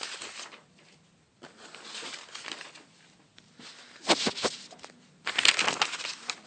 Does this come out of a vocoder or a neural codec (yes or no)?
no